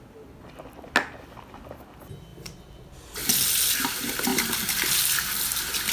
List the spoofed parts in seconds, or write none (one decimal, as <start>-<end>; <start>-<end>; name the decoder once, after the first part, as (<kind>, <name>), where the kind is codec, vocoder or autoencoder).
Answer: 4.3-5.0 (vocoder, BigVGAN v2)